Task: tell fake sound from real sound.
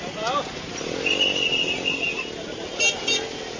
real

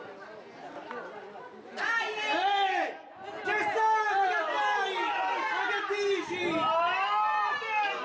real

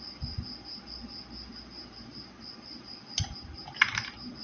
real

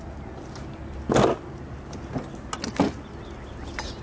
real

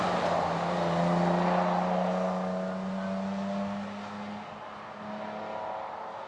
real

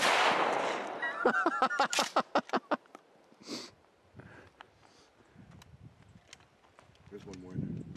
real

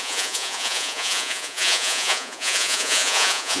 fake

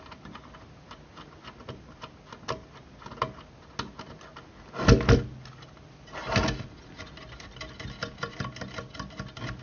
real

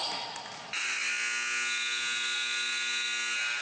real